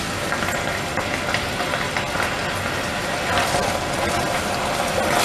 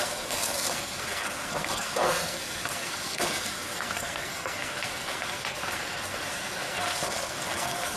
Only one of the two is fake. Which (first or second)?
second